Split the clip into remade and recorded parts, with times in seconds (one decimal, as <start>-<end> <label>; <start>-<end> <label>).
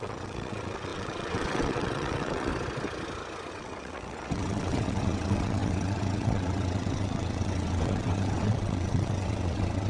0.0-2.5 remade; 2.5-3.5 recorded; 3.5-9.9 remade